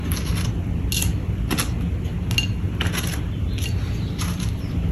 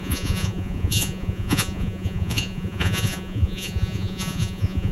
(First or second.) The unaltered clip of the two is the first